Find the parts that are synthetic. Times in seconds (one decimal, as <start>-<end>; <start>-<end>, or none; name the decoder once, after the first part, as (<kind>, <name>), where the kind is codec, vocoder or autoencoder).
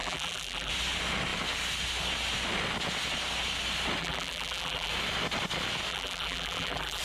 0.0-0.7 (vocoder, BigVGAN v2); 4.0-4.9; 5.9-7.0